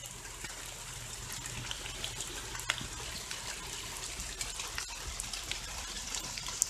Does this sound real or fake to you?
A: real